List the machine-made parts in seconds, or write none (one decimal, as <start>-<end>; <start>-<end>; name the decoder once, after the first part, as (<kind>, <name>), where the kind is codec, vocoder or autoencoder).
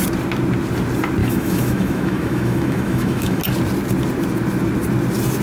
1.2-3.4 (autoencoder, DAC-VAE)